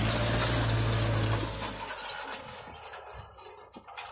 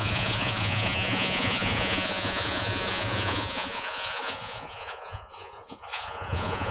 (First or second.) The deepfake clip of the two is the second